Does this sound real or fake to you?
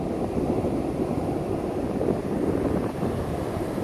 real